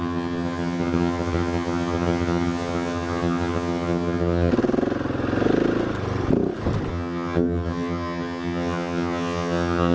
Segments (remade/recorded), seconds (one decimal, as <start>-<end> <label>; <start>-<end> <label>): 0.0-4.5 remade; 4.5-6.9 recorded; 6.9-9.9 remade